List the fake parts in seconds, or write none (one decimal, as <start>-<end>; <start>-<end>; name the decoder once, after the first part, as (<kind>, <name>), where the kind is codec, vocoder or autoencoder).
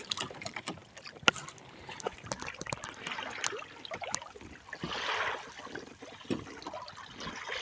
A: none